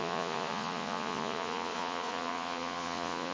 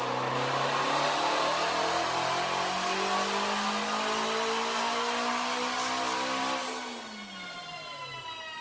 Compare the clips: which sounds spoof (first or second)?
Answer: first